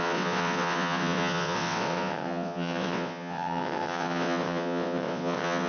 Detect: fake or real fake